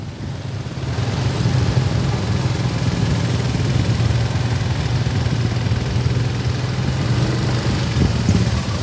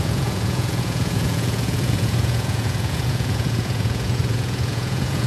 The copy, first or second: second